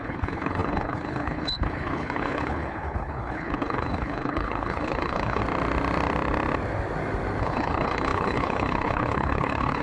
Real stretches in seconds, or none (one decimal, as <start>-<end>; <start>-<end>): 5.4-7.4